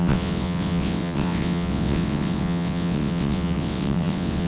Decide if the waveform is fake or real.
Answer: fake